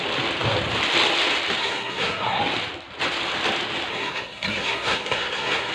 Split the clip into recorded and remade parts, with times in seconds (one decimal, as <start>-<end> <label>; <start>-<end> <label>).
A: 0.0-1.6 recorded; 1.6-2.4 remade; 2.4-3.9 recorded; 3.9-5.7 remade